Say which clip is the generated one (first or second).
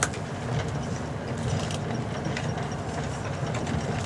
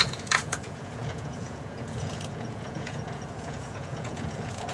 second